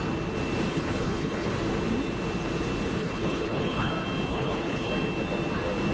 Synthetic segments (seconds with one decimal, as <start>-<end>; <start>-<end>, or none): 0.7-1.5; 3.0-3.9; 4.3-4.9